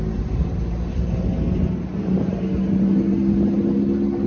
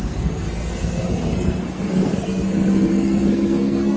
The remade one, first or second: second